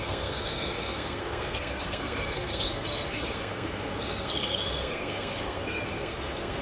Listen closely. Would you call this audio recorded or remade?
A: remade